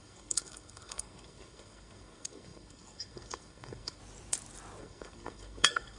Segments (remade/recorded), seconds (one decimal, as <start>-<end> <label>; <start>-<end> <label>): 0.0-4.0 remade; 4.0-4.8 recorded; 4.8-6.0 remade

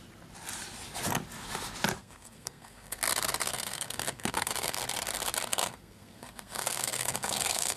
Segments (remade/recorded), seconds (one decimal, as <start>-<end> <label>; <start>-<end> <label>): 0.0-2.0 recorded; 2.0-3.0 remade; 3.0-3.4 recorded; 3.4-4.8 remade; 4.8-5.5 recorded; 5.5-7.8 remade